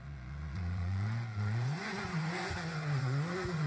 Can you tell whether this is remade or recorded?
remade